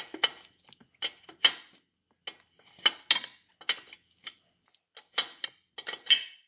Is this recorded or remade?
recorded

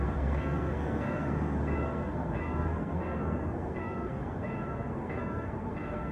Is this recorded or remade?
remade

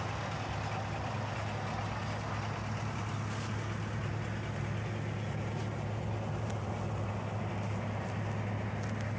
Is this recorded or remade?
recorded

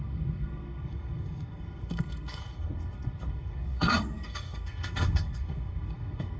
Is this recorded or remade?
remade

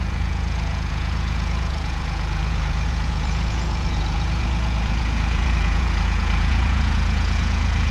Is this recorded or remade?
remade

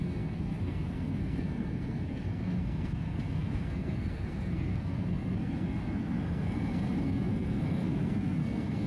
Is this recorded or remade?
remade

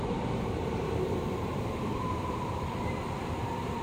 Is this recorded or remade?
remade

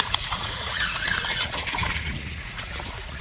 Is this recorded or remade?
remade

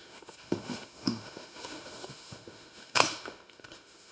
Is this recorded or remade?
remade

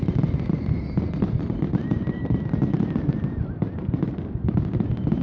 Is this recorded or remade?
recorded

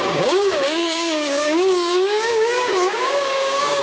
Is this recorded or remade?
remade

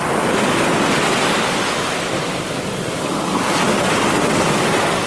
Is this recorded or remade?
recorded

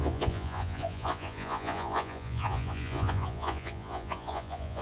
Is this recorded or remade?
remade